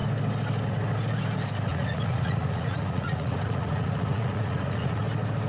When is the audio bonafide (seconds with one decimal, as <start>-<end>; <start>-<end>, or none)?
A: 0.0-1.7; 5.0-5.5